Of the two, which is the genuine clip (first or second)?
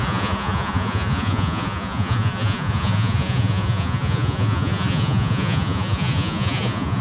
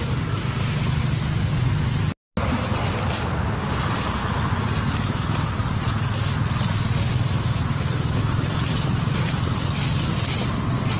second